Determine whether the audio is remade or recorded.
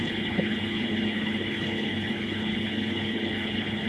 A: remade